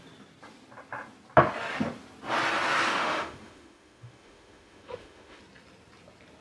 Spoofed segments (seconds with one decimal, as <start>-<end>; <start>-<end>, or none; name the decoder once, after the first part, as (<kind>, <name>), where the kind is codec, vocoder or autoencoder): 2.9-5.4 (autoencoder, DAC-VAE)